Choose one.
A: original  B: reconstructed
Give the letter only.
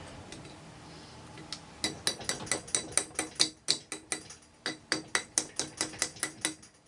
A